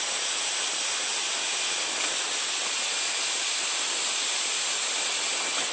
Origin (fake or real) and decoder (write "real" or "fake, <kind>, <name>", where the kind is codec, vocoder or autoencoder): real